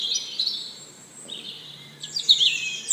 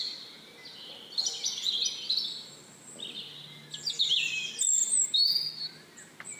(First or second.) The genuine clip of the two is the second